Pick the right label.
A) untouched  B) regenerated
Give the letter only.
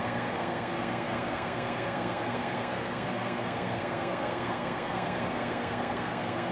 B